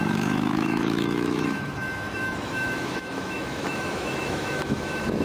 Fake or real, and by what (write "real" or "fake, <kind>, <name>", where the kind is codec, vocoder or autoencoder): fake, autoencoder, DAC-VAE